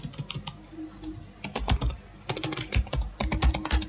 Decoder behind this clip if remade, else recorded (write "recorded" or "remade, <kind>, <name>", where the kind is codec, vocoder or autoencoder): recorded